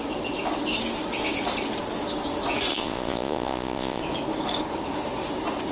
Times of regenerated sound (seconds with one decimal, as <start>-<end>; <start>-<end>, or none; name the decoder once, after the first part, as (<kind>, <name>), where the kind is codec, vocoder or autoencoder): 2.7-4.0 (vocoder, Vocos)